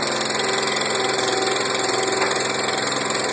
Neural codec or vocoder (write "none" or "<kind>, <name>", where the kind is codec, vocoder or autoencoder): none